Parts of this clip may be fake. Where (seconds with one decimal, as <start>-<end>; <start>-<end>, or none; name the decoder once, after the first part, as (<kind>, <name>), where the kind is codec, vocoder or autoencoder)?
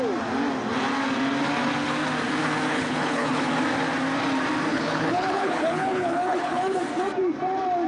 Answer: 2.7-3.5 (codec, HILCodec); 4.7-6.8